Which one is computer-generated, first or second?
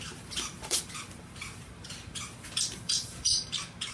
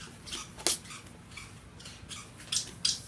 first